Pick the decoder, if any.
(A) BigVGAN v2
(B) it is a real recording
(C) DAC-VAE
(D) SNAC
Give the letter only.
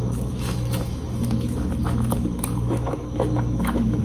C